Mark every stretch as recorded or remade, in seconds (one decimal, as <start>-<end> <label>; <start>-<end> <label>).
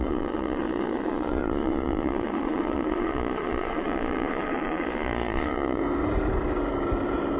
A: 0.0-5.8 remade; 5.8-7.4 recorded